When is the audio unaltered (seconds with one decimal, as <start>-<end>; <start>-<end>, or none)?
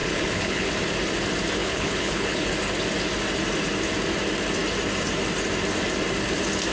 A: 0.7-1.6; 2.5-6.7